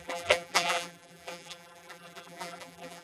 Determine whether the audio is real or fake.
fake